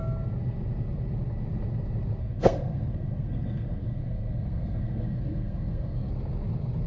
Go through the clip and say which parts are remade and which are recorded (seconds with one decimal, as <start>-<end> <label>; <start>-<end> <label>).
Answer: 0.0-2.2 recorded; 2.2-6.1 remade; 6.1-6.9 recorded